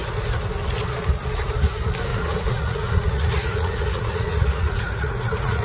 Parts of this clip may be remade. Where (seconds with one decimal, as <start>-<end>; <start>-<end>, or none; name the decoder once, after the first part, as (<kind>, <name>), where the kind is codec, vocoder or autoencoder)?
2.1-5.6 (vocoder, Vocos)